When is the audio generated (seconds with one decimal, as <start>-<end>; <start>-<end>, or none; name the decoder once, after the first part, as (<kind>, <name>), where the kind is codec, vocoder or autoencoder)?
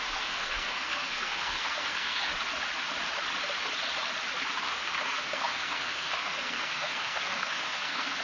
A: 0.0-2.3 (codec, SNAC); 4.6-8.2